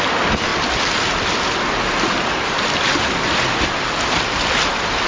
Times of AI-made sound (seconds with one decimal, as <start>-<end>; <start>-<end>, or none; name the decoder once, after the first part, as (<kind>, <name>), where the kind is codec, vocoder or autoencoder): none

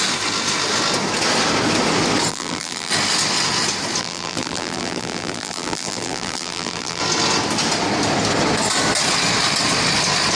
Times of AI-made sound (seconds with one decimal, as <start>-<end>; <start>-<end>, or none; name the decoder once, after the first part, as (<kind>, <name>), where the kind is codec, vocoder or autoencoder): 2.3-2.9 (vocoder, BigVGAN v2); 4.0-7.0